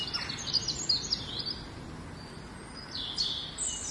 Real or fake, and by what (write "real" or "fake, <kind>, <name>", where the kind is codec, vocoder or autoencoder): real